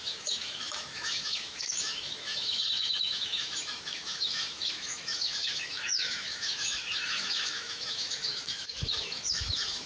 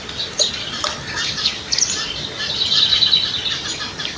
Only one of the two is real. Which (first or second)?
second